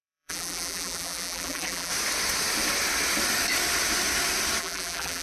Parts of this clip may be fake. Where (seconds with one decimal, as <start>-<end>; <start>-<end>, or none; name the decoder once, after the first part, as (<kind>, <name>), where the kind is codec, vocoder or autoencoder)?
0.0-1.9 (vocoder, BigVGAN v2); 4.6-5.2